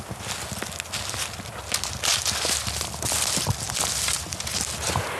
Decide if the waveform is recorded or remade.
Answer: recorded